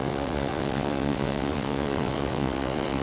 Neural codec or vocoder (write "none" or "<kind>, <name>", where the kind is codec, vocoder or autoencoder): vocoder, WaveNeXt